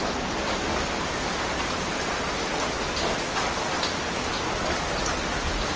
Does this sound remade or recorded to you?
recorded